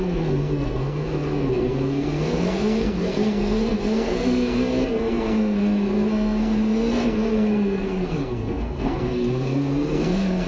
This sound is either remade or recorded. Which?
remade